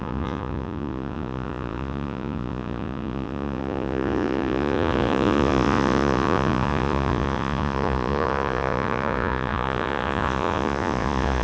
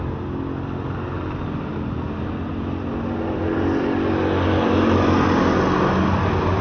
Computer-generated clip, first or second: first